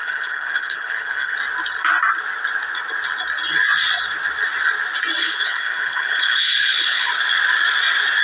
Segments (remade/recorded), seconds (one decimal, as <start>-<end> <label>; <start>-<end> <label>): 0.0-1.4 remade; 1.4-5.2 recorded; 5.2-7.1 remade; 7.1-8.2 recorded